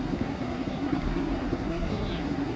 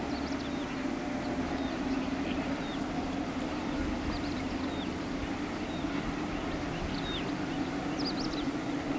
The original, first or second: second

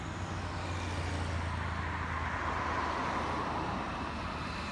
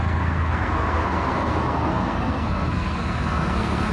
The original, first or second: first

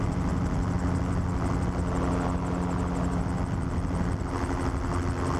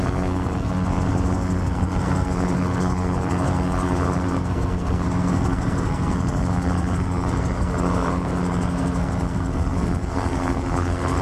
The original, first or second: first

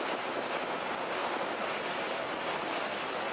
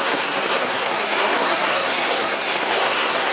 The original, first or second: first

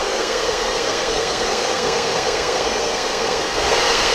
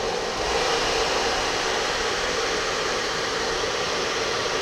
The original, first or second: second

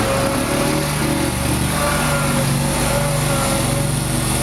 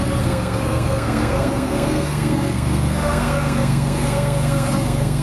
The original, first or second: first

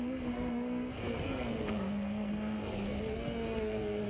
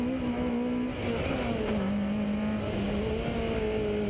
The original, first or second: second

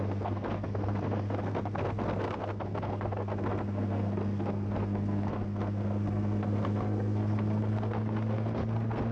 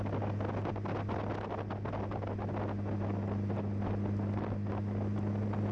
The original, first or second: second